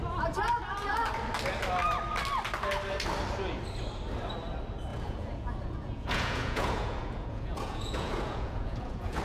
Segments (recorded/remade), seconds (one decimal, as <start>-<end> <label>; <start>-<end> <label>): 0.0-4.9 recorded; 4.9-9.2 remade